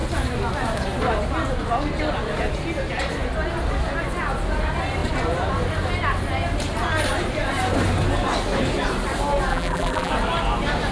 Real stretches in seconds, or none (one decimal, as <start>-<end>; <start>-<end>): 0.0-9.5; 10.1-10.9